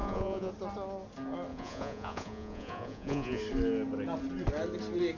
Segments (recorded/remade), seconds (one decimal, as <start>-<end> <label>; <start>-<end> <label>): 0.0-0.5 remade; 0.5-1.5 recorded; 1.5-3.4 remade; 3.4-5.2 recorded